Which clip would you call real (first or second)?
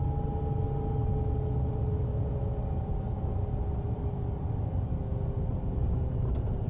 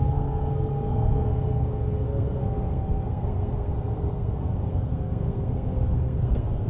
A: first